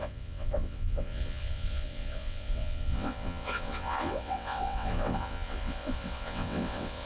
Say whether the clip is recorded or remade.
remade